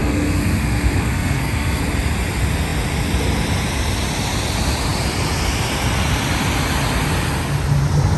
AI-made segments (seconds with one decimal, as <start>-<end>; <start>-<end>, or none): 0.0-1.8